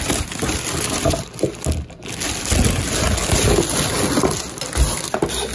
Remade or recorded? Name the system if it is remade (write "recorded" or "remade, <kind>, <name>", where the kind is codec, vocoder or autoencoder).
recorded